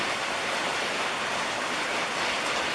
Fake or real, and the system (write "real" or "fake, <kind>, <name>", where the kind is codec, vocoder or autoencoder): real